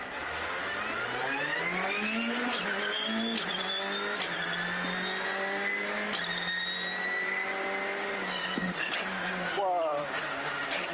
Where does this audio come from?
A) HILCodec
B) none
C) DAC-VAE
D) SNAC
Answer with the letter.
B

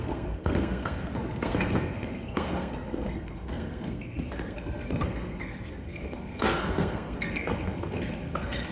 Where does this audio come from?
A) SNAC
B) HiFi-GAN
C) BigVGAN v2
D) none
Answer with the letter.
A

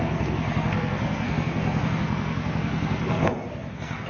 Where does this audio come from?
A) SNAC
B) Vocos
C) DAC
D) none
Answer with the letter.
A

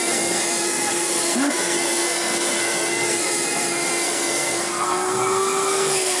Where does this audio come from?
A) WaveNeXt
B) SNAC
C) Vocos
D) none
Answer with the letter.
B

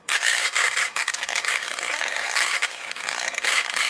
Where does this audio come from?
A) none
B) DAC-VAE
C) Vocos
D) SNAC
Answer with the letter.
D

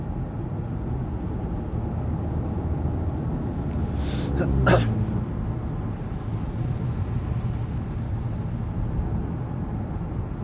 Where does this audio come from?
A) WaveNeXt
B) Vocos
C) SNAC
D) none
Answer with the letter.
D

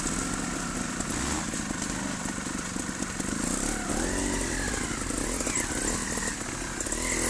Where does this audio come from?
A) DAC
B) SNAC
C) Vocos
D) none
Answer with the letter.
D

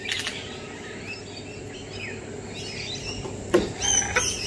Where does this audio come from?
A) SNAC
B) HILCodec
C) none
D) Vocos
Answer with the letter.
C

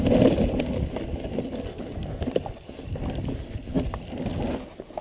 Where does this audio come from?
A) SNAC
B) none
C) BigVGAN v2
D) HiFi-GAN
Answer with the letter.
B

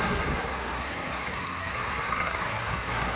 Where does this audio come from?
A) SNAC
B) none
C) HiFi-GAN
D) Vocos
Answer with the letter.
A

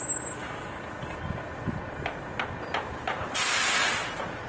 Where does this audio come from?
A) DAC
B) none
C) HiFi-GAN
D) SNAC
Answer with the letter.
B